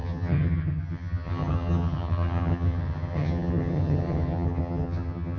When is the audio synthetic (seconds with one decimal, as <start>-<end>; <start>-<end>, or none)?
0.0-5.4